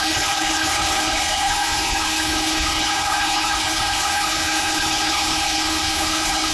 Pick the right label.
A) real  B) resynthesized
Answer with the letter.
B